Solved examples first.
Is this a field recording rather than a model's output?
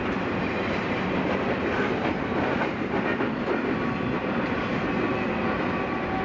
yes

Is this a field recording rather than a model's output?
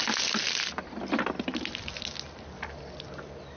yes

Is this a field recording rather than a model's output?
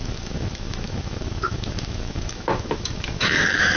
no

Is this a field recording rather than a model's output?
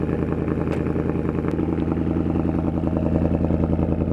yes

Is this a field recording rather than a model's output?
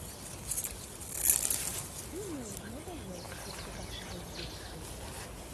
yes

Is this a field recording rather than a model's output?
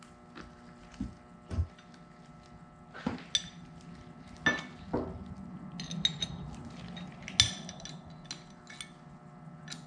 yes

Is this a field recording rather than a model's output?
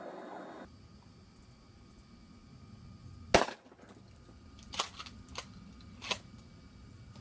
yes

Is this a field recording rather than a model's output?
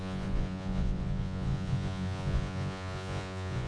no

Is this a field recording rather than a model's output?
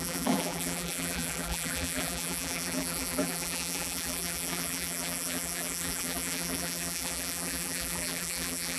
no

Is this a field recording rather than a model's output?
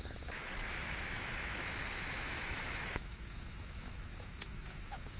no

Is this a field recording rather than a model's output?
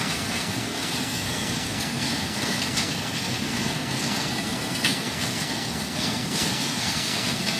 no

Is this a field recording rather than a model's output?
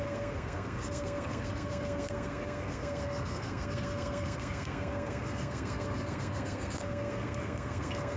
no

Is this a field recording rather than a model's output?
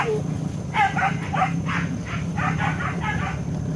yes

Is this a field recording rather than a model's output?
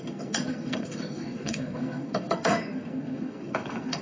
no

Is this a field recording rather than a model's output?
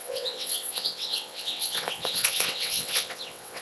no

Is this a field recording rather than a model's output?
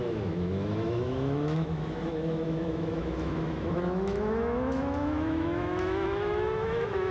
no